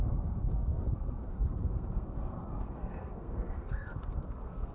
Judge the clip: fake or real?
fake